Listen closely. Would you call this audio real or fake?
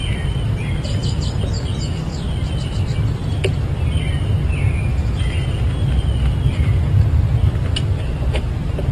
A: real